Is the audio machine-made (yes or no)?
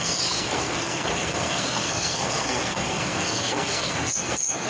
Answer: yes